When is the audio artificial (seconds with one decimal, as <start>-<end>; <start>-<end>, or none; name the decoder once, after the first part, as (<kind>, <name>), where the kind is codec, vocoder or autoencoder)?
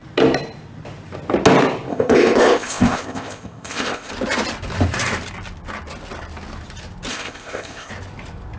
1.9-4.1 (codec, ZipCodec); 7.1-7.9